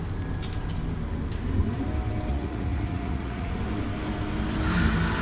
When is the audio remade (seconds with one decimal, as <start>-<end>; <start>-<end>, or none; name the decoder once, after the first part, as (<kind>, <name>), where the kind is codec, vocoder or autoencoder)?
2.3-3.6 (vocoder, Vocos)